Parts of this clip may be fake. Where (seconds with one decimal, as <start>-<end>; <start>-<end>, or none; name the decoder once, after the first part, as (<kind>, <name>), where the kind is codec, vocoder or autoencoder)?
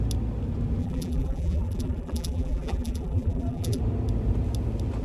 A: 0.8-3.8 (vocoder, BigVGAN v2)